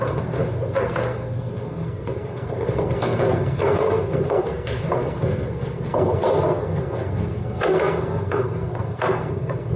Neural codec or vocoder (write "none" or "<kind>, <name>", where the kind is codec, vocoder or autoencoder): codec, SNAC